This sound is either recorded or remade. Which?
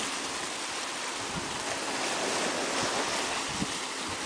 recorded